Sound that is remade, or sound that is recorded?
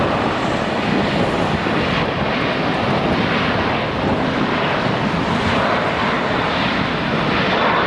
recorded